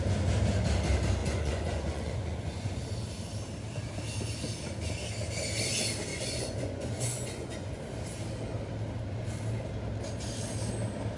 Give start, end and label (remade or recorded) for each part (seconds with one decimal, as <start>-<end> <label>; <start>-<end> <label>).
0.0-1.2 recorded; 1.2-2.8 remade; 2.8-6.1 recorded; 6.1-7.8 remade; 7.8-11.2 recorded